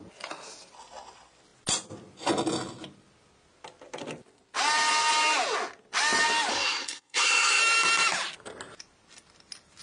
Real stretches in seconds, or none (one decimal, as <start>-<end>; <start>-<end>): 0.0-6.5; 7.6-9.8